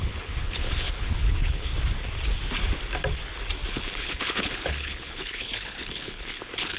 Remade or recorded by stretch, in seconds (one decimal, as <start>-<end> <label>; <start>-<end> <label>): 0.0-1.7 remade; 1.7-3.7 recorded; 3.7-6.8 remade